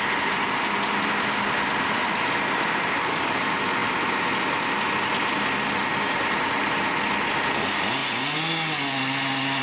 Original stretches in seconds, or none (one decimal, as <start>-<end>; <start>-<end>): 0.0-1.7; 3.4-9.6